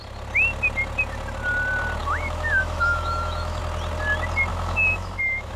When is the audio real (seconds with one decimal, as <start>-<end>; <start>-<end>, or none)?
0.0-2.0; 3.6-4.5